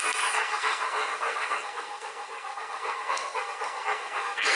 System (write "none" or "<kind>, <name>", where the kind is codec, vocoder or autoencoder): codec, SNAC